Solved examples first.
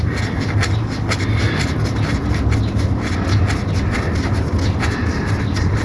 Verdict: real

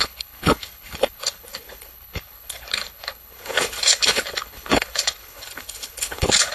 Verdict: fake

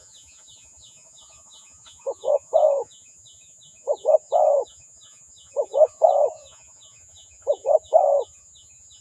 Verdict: fake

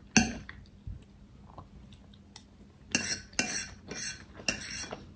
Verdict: real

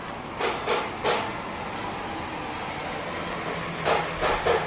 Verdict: real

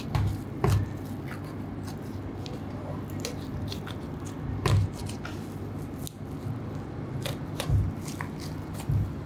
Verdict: real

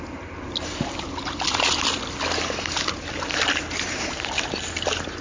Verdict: real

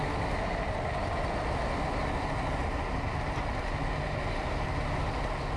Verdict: real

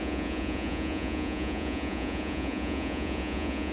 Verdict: fake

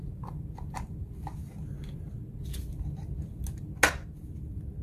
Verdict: real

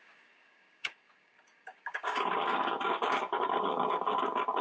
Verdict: fake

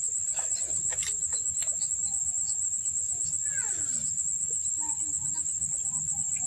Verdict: real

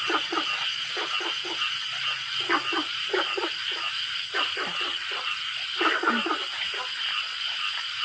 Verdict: real